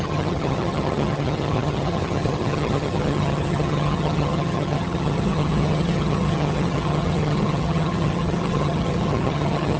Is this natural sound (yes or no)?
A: no